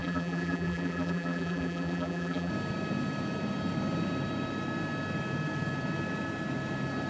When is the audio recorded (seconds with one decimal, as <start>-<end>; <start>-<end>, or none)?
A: 2.5-7.1